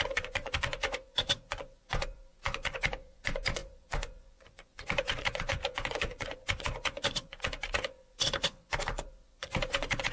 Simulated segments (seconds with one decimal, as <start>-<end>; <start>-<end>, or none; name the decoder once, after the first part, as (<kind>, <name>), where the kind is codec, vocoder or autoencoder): 0.0-10.1 (vocoder, Vocos)